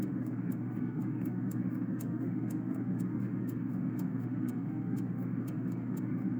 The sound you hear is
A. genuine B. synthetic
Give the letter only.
B